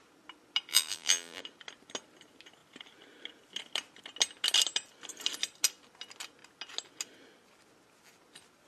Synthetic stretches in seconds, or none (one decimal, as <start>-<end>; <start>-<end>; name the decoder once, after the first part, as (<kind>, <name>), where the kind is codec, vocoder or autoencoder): 0.7-1.4 (vocoder, BigVGAN v2)